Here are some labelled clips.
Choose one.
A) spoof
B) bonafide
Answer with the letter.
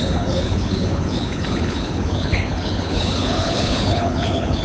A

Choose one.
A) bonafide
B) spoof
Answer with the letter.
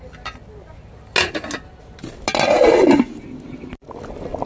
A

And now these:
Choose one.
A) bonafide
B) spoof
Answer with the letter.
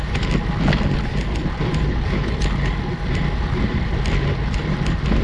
A